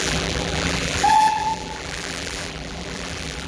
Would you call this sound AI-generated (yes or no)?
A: yes